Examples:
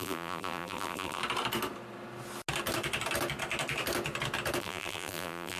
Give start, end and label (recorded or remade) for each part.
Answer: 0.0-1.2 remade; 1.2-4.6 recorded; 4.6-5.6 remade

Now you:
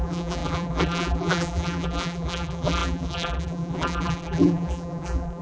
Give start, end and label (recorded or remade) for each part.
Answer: 0.0-5.4 remade

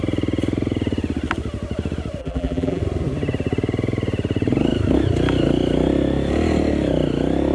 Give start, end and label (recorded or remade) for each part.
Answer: 0.0-2.2 recorded; 2.2-2.8 remade; 2.8-7.5 recorded

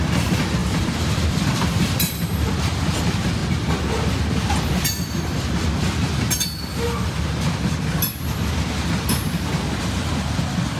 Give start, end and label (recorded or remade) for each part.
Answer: 0.0-0.6 recorded; 0.6-2.5 remade; 2.5-10.8 recorded

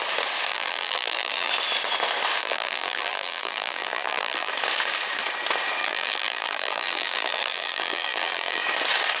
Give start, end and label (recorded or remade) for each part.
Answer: 0.0-0.5 recorded; 0.5-1.5 remade; 1.5-2.4 recorded; 2.4-4.5 remade; 4.5-5.8 recorded; 5.8-8.6 remade; 8.6-9.2 recorded

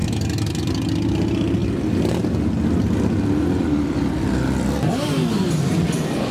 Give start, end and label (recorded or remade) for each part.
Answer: 0.0-6.3 recorded

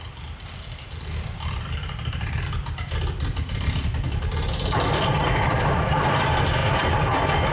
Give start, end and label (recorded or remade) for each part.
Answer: 0.0-7.5 remade